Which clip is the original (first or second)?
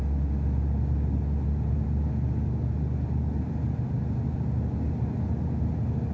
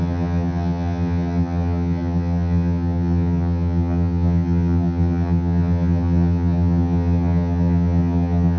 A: first